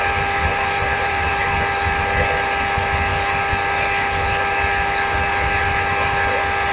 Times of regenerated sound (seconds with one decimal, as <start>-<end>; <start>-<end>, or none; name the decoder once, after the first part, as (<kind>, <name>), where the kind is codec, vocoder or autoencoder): 0.5-1.4 (vocoder, BigVGAN v2)